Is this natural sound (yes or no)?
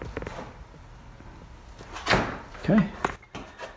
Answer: yes